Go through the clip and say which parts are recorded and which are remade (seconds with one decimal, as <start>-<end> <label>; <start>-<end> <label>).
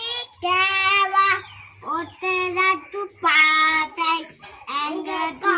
0.0-3.4 recorded; 3.4-4.2 remade; 4.2-5.6 recorded